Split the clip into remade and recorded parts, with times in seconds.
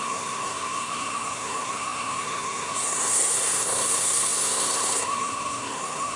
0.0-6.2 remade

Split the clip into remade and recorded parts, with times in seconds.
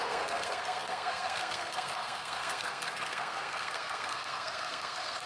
0.0-5.3 remade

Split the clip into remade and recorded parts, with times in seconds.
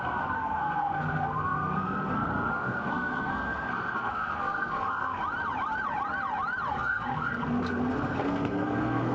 0.0-5.2 remade; 5.2-6.7 recorded; 6.7-9.1 remade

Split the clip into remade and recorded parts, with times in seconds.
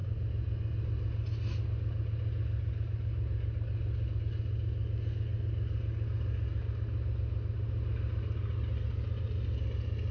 0.0-10.1 recorded